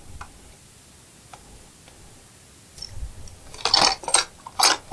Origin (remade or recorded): recorded